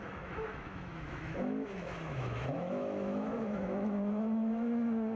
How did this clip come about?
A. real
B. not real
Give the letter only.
B